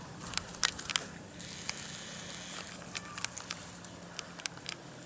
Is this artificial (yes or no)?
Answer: no